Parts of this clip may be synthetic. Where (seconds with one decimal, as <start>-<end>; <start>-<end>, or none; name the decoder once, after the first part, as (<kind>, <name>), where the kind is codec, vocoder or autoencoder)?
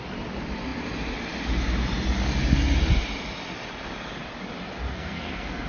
4.9-5.7 (codec, SNAC)